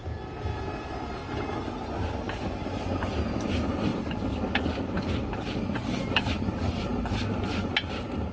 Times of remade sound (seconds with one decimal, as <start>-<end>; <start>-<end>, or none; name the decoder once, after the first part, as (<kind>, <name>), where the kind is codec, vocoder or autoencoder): none